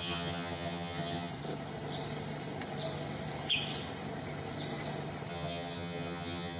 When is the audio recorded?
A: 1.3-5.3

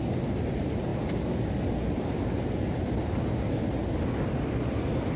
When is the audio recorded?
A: 0.0-5.2

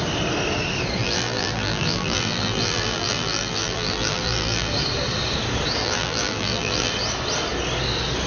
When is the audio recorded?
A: 0.0-1.0; 4.7-5.8; 6.9-8.3